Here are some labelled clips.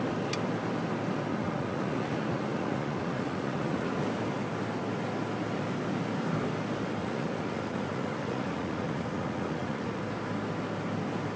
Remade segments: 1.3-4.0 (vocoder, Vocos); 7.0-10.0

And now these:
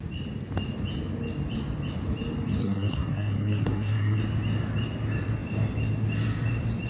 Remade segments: 2.6-4.2 (codec, SNAC)